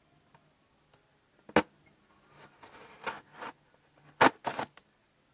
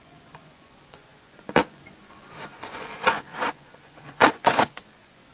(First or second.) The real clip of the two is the first